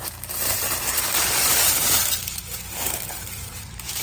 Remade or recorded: remade